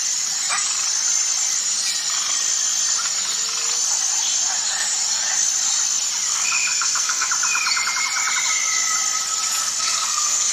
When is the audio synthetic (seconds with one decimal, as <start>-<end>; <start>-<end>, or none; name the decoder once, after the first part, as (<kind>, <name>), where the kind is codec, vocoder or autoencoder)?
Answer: 6.3-7.3 (codec, SNAC); 9.6-10.5